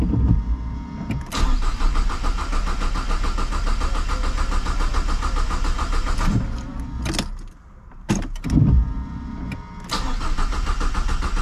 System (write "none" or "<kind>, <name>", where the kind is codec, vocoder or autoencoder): none